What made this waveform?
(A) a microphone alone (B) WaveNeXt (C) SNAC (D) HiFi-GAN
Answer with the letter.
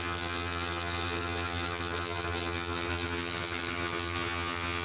D